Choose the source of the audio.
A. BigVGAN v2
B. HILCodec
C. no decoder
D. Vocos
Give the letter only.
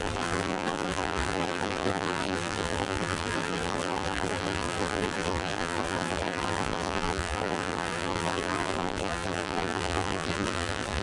A